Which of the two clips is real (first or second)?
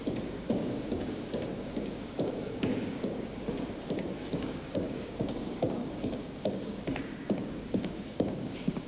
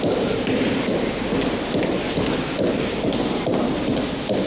second